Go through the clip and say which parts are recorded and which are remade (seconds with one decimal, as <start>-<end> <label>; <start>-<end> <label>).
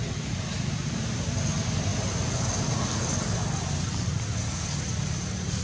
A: 0.0-5.6 recorded